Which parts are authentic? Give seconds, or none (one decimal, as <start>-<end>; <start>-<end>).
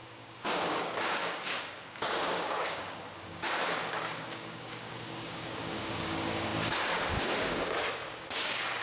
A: none